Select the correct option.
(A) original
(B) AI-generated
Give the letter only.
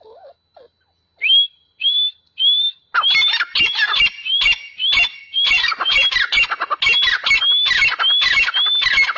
A